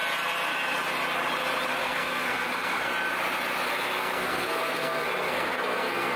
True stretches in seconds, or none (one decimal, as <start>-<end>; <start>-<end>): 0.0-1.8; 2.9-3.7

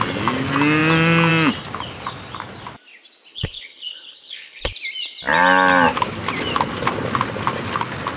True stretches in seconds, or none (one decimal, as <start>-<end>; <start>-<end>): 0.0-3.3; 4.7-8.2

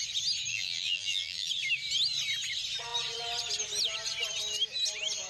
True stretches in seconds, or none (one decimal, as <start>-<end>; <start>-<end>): 0.0-0.5; 1.5-5.3